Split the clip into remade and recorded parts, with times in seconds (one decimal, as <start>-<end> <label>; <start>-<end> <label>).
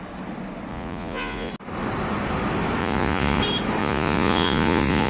0.0-0.7 recorded; 0.7-1.5 remade; 1.5-2.8 recorded; 2.8-3.4 remade; 3.4-3.8 recorded; 3.8-5.1 remade